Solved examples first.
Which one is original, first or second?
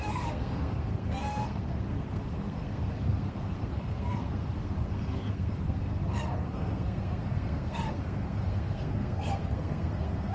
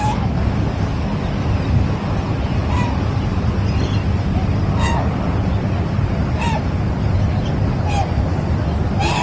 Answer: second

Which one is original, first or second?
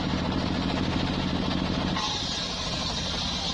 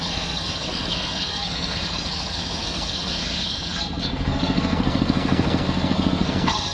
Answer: first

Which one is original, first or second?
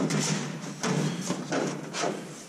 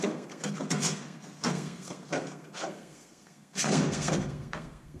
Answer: first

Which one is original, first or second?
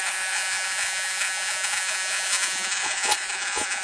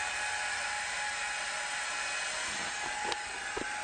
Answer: second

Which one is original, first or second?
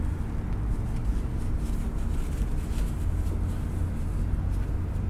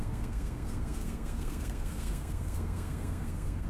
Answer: first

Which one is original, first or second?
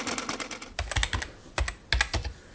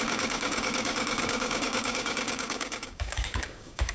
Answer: first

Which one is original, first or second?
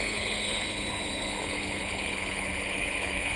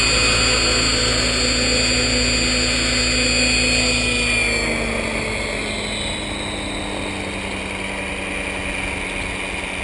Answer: second